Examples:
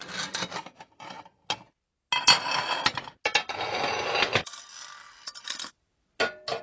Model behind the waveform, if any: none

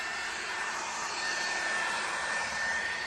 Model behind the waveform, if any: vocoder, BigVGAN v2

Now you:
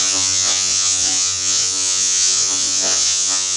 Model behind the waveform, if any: vocoder, Vocos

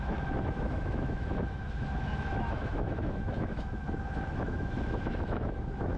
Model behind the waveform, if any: autoencoder, DAC-VAE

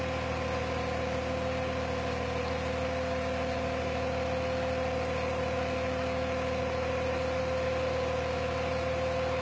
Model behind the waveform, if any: none